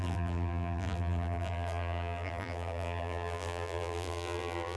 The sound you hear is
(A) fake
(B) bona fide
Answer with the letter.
A